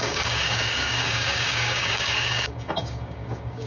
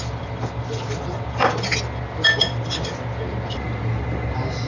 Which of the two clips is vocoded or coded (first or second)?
first